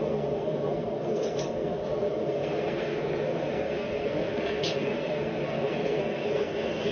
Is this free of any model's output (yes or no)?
no